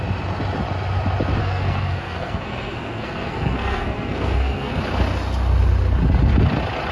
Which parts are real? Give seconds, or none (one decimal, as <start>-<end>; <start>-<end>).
0.0-1.4; 4.8-6.9